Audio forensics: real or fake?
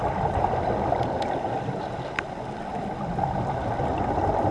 real